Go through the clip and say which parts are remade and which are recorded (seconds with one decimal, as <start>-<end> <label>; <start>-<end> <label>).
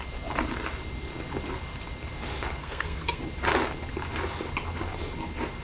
0.0-2.6 recorded; 2.6-3.2 remade; 3.2-5.6 recorded